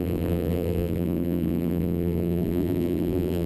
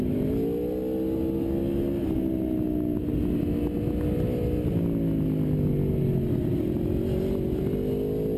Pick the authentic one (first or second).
second